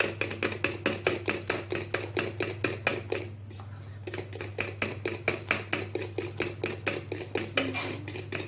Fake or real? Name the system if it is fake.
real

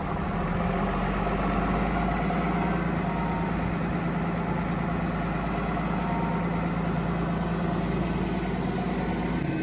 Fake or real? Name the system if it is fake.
real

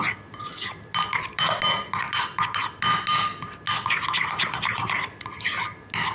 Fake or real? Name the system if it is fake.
real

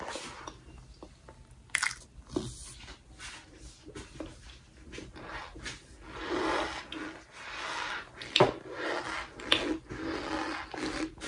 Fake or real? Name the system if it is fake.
real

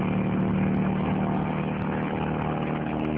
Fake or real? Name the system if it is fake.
real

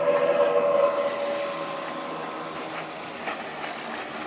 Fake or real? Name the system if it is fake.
real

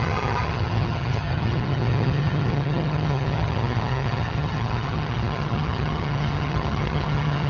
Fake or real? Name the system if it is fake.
fake, vocoder, HiFi-GAN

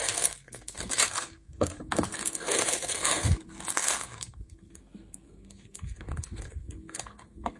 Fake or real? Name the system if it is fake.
fake, codec, SNAC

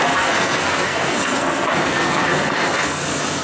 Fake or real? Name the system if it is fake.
fake, codec, SNAC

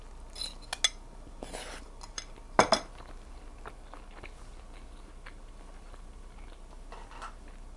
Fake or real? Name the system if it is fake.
real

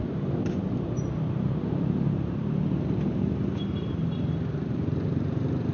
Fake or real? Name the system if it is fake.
fake, vocoder, BigVGAN v2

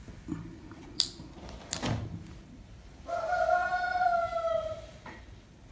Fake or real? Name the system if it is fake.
fake, vocoder, BigVGAN v2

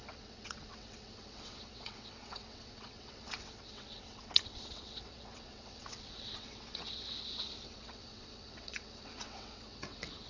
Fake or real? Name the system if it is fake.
fake, vocoder, WaveNeXt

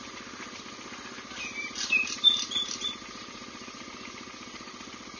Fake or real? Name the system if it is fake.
real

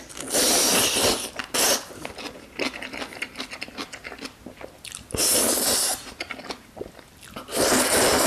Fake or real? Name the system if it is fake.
real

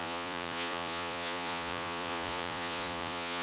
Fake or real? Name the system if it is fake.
fake, vocoder, Vocos